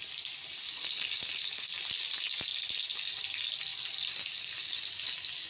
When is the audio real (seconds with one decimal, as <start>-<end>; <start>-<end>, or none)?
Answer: 0.0-3.7; 4.8-5.5